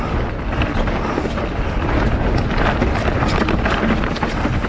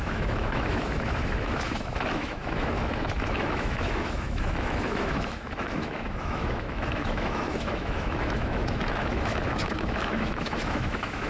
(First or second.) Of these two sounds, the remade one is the second